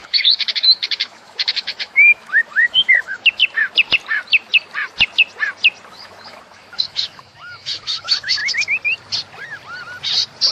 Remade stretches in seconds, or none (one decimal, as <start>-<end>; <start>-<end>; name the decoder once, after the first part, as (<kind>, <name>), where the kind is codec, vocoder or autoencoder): 0.0-3.4 (autoencoder, DAC-VAE); 5.9-8.4